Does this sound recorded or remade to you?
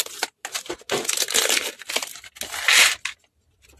recorded